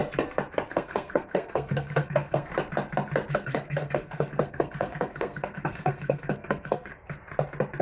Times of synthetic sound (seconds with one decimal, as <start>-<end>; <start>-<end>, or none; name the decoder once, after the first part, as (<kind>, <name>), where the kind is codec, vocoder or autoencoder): 0.7-2.5 (codec, SNAC); 3.3-6.9